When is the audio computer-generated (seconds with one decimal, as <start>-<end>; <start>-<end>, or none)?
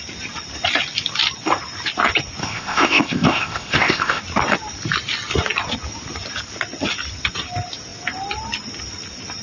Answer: 2.4-4.2